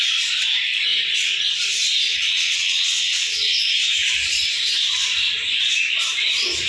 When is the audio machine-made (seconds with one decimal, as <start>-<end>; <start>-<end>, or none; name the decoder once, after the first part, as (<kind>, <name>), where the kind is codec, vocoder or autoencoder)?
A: 2.1-3.6 (vocoder, WaveNeXt)